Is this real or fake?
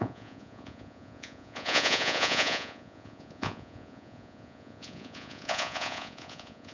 fake